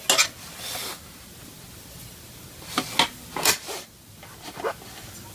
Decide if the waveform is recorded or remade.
recorded